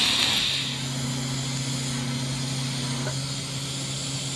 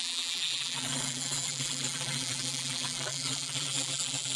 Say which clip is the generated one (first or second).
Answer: second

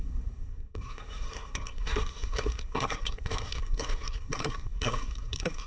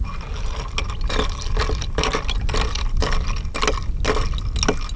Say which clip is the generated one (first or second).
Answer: first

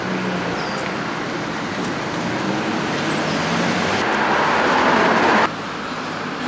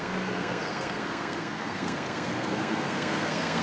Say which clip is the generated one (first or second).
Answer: second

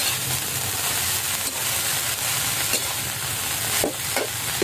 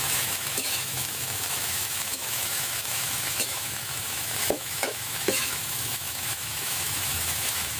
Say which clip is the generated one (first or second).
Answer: second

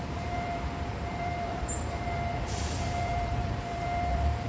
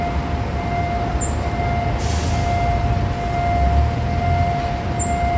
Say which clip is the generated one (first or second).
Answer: first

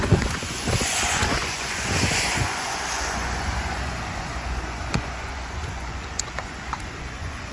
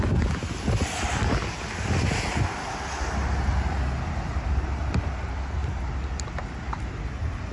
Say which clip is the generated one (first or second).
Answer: first